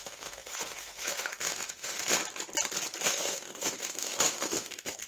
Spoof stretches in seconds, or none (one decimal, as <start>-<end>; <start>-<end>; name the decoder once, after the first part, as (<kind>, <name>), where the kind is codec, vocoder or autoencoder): 0.0-2.2 (autoencoder, DAC-VAE); 3.0-5.1